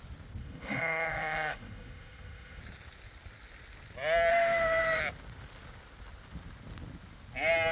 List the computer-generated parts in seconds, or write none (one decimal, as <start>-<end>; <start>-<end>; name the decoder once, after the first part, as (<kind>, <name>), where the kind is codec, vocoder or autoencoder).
0.4-2.6 (autoencoder, DAC-VAE); 4.3-5.0